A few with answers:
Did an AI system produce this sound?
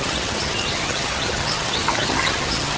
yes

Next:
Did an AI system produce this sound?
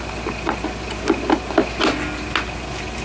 no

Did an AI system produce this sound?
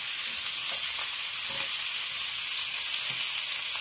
no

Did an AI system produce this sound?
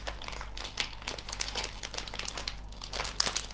no